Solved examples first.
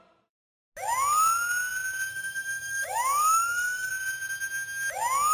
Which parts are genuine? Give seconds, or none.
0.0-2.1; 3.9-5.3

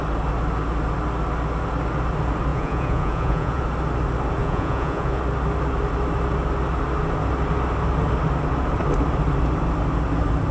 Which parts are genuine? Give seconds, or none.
0.0-2.5; 3.6-4.4; 5.2-10.5

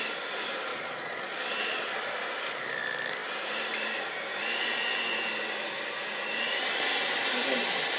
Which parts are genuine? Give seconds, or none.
0.0-0.7; 1.9-8.0

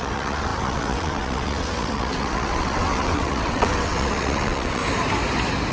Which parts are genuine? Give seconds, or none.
4.8-5.7